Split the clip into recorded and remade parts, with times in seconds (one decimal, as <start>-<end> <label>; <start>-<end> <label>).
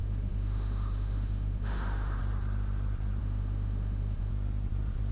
0.0-2.2 remade; 2.2-3.2 recorded; 3.2-4.3 remade; 4.3-5.1 recorded